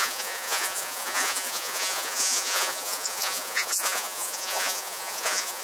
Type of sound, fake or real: fake